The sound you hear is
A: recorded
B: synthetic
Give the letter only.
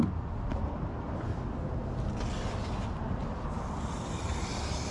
A